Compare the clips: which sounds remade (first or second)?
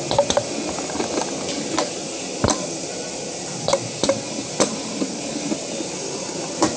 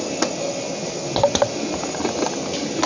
first